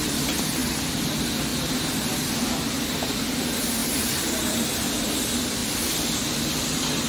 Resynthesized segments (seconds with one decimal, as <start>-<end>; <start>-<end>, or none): 3.8-4.9; 5.6-6.2